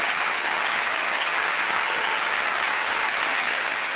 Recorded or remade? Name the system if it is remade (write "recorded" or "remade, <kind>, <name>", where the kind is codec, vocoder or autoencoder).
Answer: remade, vocoder, HiFi-GAN